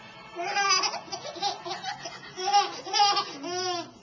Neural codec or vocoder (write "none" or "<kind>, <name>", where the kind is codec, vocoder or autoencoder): none